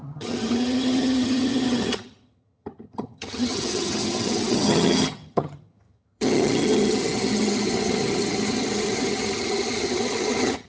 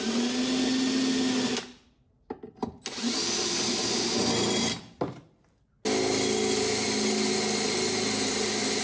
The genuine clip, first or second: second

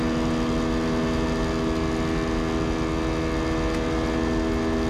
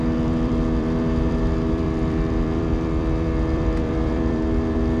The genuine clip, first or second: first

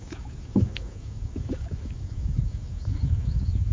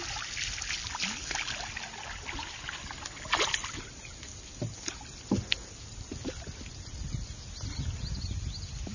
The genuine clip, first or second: second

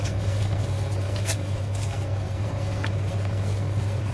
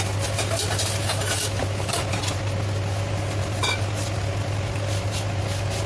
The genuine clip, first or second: second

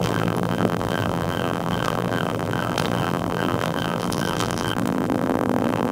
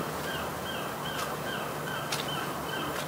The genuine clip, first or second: second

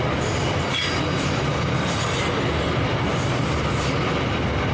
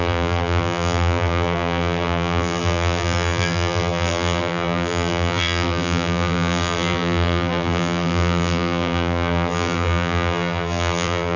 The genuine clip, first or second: first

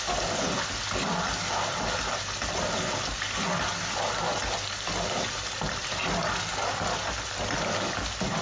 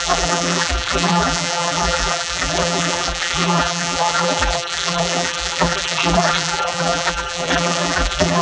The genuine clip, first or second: first